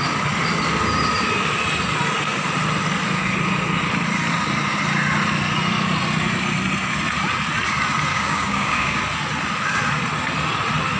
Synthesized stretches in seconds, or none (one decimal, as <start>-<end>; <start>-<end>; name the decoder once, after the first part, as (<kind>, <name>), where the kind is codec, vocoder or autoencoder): 8.1-9.0 (codec, DAC)